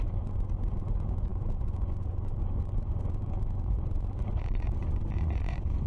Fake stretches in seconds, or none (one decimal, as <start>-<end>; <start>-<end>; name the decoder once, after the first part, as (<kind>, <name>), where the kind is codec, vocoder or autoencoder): 0.0-5.9 (vocoder, Vocos)

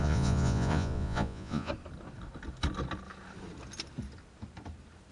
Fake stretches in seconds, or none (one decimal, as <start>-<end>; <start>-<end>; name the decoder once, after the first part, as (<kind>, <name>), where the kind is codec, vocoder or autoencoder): 0.0-1.7 (vocoder, Vocos)

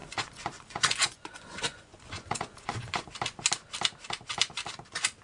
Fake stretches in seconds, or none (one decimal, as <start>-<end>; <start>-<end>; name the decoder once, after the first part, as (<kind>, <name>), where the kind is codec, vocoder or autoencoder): 0.0-3.1 (vocoder, Vocos)